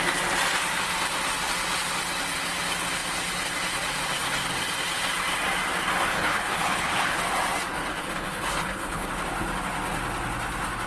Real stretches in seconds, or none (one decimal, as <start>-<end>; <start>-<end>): 0.0-6.1; 7.2-7.9; 9.1-10.9